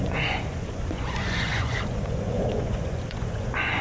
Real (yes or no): no